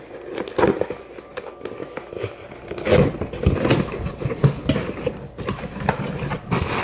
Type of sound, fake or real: real